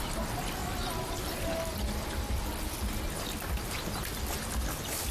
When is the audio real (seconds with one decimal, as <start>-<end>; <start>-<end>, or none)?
0.0-5.1